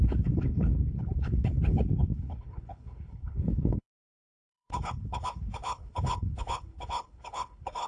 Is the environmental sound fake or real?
fake